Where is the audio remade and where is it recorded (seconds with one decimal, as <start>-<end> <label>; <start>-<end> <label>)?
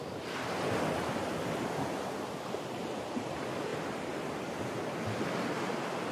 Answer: 0.0-3.7 recorded; 3.7-4.8 remade; 4.8-6.1 recorded